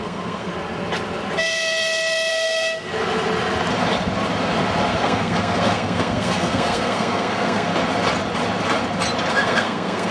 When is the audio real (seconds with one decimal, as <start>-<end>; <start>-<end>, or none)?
0.5-2.3; 2.9-4.9; 7.7-9.3